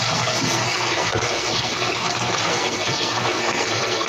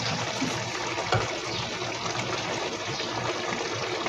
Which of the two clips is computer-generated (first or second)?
first